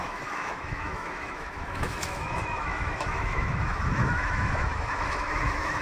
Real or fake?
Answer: fake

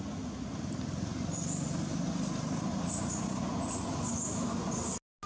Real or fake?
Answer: real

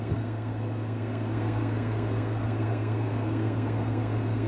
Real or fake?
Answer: fake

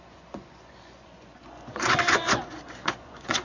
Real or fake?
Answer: fake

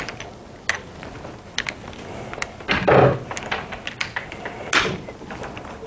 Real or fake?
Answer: real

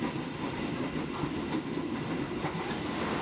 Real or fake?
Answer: real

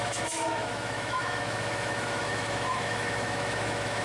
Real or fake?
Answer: fake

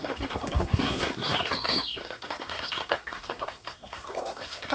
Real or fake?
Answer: fake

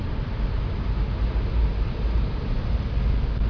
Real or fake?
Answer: real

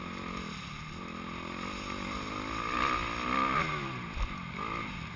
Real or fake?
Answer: real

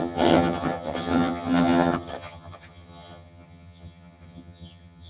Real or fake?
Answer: fake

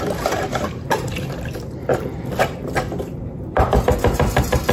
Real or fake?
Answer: fake